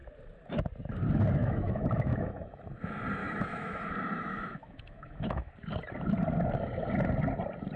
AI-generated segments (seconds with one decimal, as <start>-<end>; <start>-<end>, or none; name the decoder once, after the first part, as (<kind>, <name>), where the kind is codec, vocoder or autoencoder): 1.4-2.6 (autoencoder, DAC-VAE); 3.2-3.9; 4.3-5.5